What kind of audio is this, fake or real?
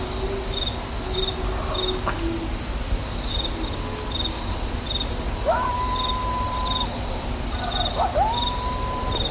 real